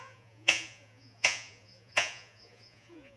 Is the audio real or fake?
fake